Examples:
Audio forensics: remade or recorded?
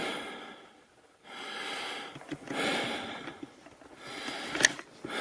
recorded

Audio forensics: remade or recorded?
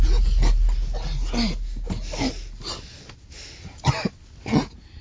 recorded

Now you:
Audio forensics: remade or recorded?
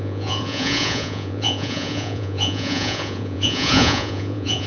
remade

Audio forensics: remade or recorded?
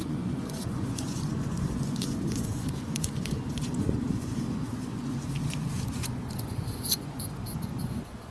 remade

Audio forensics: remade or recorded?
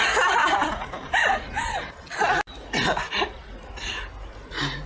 recorded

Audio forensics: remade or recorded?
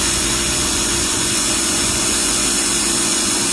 remade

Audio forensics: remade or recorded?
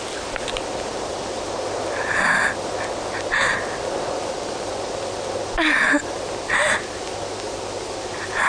recorded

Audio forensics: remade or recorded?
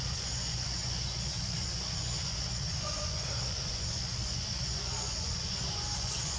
remade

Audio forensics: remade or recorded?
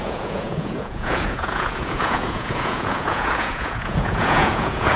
remade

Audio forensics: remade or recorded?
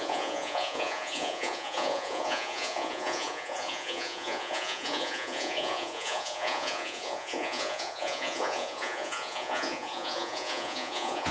remade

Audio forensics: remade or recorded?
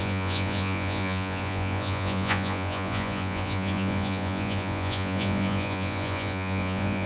remade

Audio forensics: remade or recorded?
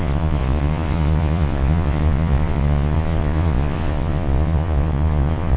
remade